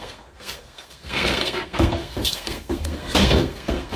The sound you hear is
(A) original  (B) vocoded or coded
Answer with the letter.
B